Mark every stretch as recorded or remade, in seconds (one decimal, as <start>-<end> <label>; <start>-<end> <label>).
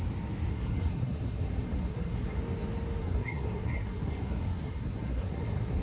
0.0-0.5 recorded; 0.5-2.4 remade; 2.4-3.0 recorded; 3.0-5.8 remade